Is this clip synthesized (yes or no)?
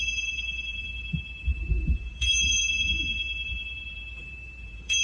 yes